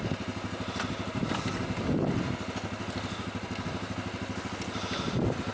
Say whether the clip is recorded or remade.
recorded